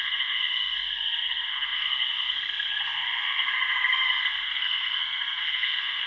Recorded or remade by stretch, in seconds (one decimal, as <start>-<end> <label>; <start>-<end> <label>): 0.0-6.1 remade

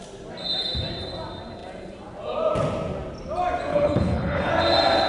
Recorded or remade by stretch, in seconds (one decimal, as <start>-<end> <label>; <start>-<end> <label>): 0.0-3.7 recorded; 3.7-4.5 remade; 4.5-5.1 recorded

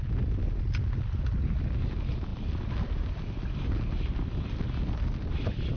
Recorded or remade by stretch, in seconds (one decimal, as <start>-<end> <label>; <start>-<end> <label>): 0.0-5.8 recorded

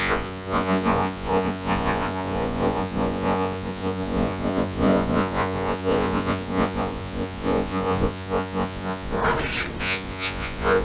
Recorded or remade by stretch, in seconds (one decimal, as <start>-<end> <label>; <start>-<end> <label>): 0.0-9.2 remade; 9.2-9.8 recorded; 9.8-10.8 remade

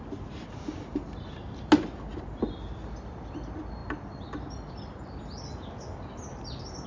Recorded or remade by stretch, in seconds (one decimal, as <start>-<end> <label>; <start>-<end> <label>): 0.0-6.9 recorded

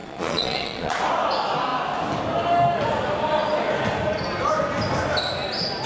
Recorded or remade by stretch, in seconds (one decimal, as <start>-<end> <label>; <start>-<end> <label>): 0.0-1.0 remade; 1.0-5.9 recorded

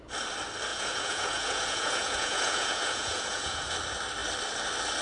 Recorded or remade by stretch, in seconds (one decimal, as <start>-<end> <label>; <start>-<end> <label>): 0.0-0.7 recorded; 0.7-3.7 remade; 3.7-5.0 recorded